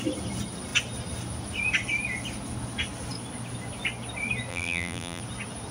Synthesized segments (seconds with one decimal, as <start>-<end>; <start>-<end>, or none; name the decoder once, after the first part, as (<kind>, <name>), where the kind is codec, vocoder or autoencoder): 4.5-5.2 (vocoder, BigVGAN v2)